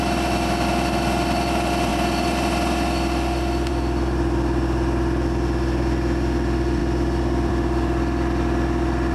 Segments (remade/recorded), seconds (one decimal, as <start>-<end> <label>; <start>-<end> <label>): 0.0-9.1 recorded